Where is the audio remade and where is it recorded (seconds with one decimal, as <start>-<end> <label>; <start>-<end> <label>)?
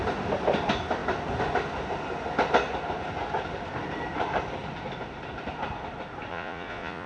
0.0-6.3 recorded; 6.3-7.1 remade